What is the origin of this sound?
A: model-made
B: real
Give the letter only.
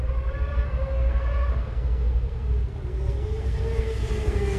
A